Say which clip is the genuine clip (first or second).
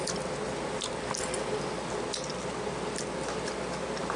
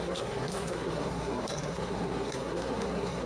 first